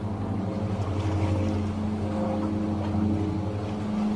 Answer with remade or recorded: recorded